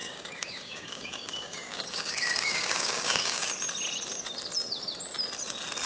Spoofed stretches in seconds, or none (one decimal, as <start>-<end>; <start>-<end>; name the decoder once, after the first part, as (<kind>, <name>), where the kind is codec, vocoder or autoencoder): 0.0-3.5 (codec, DAC)